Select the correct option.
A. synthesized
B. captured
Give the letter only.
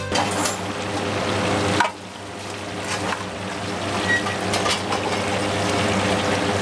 B